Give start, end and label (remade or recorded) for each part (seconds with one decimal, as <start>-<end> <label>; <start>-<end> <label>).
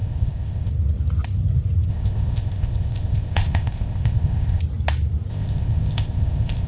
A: 0.0-0.7 remade; 0.7-1.9 recorded; 1.9-4.6 remade; 4.6-5.3 recorded; 5.3-6.7 remade